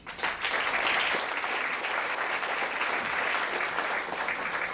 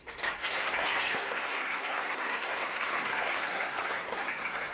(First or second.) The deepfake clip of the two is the second